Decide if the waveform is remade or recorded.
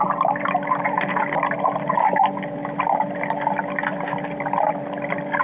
recorded